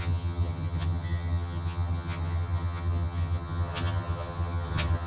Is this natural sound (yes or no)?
no